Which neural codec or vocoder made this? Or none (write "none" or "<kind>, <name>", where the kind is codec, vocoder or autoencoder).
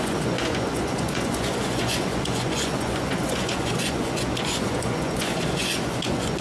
vocoder, Vocos